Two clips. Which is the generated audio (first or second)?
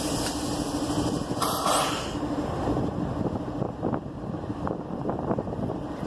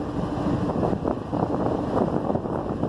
first